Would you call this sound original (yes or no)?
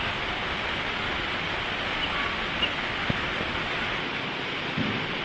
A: yes